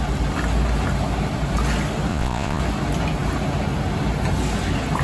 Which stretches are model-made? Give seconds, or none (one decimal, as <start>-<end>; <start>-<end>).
2.1-2.6